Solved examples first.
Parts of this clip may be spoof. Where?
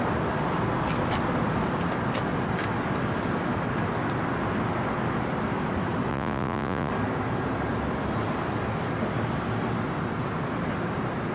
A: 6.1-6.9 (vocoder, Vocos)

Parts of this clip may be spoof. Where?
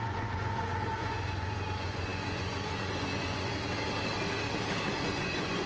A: 0.0-3.5 (vocoder, Vocos); 4.9-5.7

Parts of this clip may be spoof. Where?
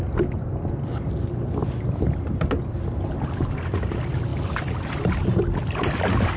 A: none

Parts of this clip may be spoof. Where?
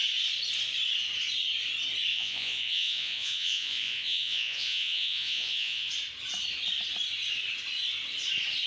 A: 2.1-5.9 (vocoder, Vocos)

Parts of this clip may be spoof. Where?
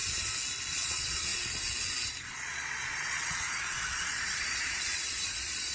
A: 0.7-1.3 (vocoder, Vocos); 2.3-5.7